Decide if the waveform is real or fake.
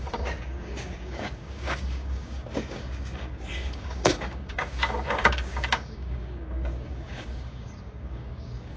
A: fake